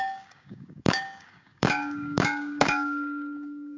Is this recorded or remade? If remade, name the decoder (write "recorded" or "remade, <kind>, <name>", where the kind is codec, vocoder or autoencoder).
remade, codec, DAC